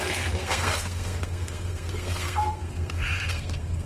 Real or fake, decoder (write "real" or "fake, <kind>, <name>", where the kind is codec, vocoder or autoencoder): fake, codec, SNAC